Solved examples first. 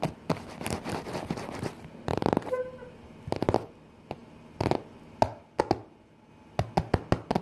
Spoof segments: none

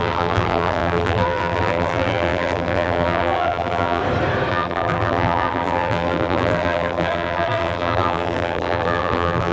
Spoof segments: 0.0-4.0; 4.5-9.5

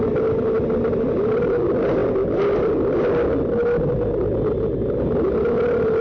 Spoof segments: none

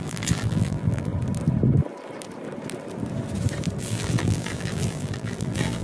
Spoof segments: 0.0-1.1; 3.8-5.8

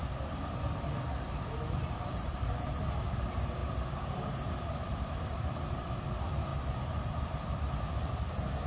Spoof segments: 2.0-3.6; 4.1-8.7

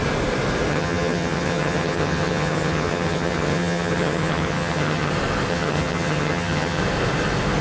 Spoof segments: 0.7-5.1; 5.5-6.8